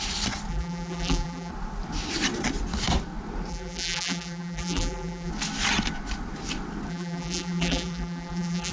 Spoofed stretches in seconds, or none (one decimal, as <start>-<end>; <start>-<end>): 0.5-1.5; 3.5-5.3; 6.9-8.7